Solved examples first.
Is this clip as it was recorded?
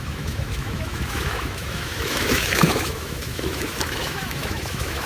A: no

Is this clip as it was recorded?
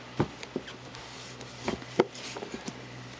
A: yes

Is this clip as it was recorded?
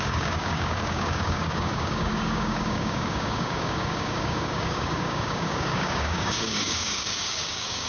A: no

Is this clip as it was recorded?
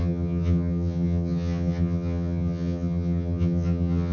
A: no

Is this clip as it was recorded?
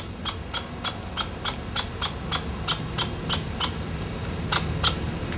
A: yes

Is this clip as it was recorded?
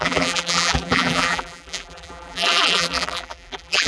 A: no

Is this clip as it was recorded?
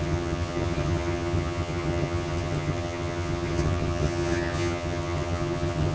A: no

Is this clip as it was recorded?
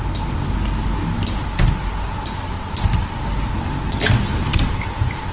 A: yes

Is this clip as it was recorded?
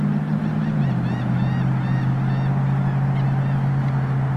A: yes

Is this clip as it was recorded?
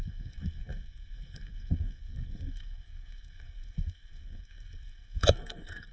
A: no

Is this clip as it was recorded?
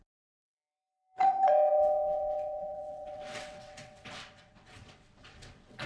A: no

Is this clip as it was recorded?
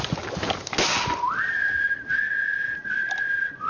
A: yes